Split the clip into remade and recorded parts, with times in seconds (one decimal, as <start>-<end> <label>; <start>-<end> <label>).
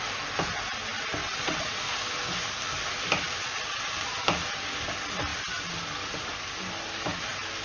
0.0-1.2 recorded; 1.2-1.8 remade; 1.8-7.6 recorded